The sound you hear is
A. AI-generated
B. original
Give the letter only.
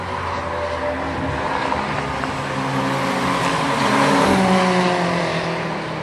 B